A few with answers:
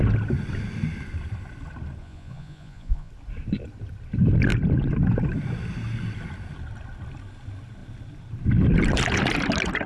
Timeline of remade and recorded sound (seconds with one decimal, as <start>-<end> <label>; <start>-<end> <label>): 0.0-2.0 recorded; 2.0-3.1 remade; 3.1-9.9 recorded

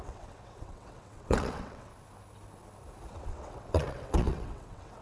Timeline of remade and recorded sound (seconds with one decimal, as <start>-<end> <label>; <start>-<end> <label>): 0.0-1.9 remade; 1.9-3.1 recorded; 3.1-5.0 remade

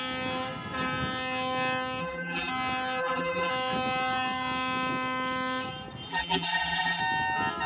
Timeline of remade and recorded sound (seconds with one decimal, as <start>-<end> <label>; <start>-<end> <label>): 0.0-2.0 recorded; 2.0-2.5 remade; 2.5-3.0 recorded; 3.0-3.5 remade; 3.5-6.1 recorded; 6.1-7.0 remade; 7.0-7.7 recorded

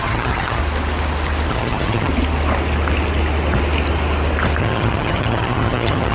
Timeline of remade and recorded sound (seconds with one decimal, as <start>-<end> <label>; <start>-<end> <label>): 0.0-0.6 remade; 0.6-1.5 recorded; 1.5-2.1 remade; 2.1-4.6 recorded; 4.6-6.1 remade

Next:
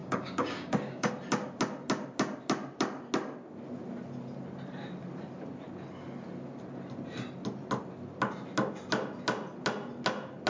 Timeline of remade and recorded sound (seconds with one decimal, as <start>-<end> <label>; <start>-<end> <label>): 0.0-1.1 remade; 1.1-10.5 recorded

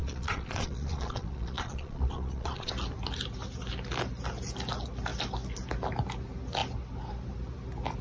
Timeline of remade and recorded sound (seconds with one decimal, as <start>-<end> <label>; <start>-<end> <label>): 0.0-2.7 remade; 2.7-8.0 recorded

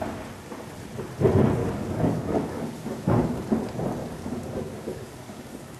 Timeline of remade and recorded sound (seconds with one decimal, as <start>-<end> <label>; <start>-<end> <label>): 0.0-1.6 recorded; 1.6-3.4 remade; 3.4-4.0 recorded; 4.0-5.8 remade